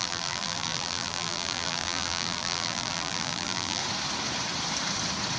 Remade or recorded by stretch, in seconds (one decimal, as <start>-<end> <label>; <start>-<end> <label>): 0.0-3.8 remade; 3.8-5.4 recorded